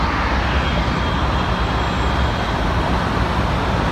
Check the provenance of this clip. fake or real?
real